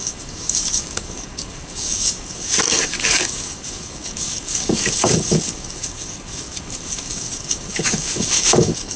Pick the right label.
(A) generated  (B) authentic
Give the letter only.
A